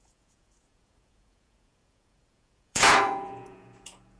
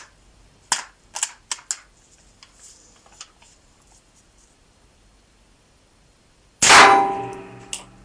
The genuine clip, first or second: second